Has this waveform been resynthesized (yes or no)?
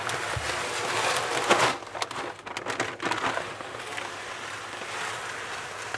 no